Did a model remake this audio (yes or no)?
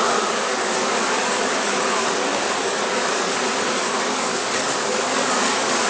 yes